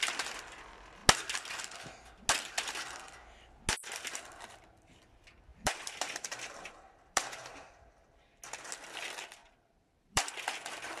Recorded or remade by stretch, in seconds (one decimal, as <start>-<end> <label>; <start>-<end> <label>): 0.0-5.5 recorded; 5.5-8.4 remade; 8.4-9.4 recorded; 9.4-10.3 remade; 10.3-11.0 recorded